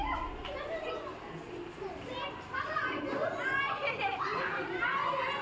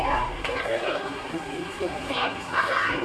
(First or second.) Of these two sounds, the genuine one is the first